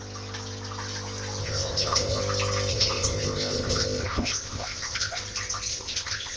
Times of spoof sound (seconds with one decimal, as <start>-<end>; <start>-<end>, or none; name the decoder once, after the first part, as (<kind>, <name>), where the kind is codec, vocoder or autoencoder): 1.4-2.2 (codec, ZipCodec); 2.7-5.2; 5.7-6.4